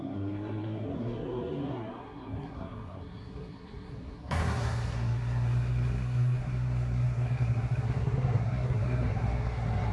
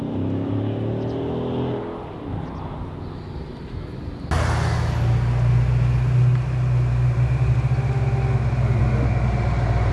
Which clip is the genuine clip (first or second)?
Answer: second